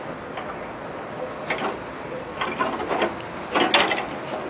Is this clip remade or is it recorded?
recorded